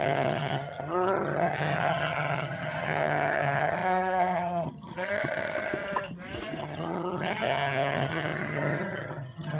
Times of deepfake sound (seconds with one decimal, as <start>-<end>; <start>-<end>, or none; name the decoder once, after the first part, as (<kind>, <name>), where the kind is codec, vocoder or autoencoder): 0.0-5.7 (vocoder, HiFi-GAN); 6.6-9.6